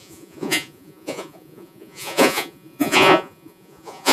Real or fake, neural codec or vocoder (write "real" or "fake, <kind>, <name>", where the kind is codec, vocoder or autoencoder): fake, vocoder, Vocos